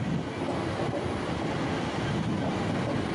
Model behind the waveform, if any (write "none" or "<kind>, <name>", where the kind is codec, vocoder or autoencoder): none